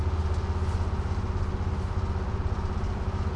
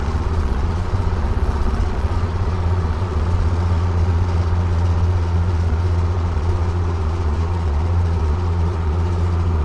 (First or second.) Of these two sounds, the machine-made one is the second